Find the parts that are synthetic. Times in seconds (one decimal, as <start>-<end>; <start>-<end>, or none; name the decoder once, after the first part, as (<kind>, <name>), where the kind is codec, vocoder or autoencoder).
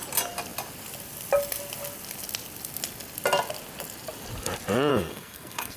4.9-5.8 (codec, SNAC)